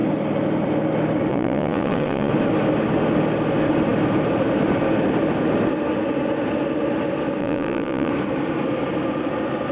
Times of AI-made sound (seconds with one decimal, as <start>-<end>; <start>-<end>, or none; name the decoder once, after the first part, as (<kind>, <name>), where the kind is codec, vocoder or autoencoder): 1.3-2.3 (vocoder, Vocos); 7.4-8.1